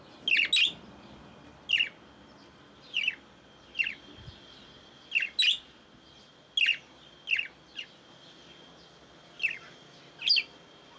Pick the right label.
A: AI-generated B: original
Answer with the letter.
B